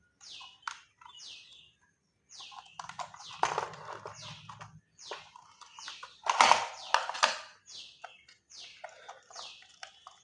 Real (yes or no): yes